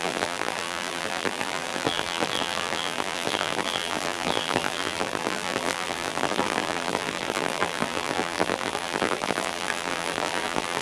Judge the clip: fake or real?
fake